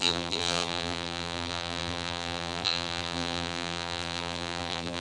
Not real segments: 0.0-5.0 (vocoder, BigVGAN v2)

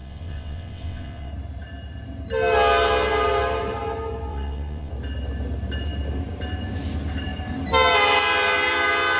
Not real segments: 0.0-1.3 (vocoder, WaveNeXt); 4.3-4.9

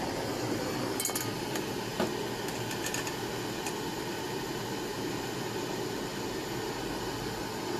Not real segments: none

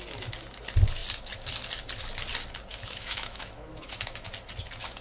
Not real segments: 2.7-4.3 (autoencoder, DAC-VAE)

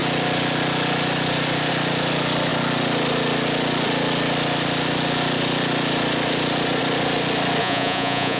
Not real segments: 7.6-8.4 (vocoder, Vocos)